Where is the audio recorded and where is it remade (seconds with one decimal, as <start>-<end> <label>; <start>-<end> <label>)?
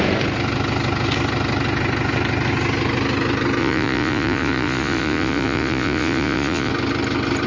0.0-3.6 recorded; 3.6-6.7 remade; 6.7-7.5 recorded